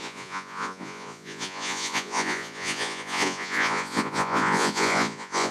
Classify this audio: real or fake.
fake